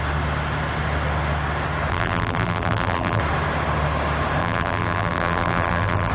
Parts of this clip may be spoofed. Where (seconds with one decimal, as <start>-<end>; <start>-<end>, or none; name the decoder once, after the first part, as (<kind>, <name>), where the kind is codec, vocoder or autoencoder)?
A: 1.9-3.2 (vocoder, BigVGAN v2); 4.4-6.1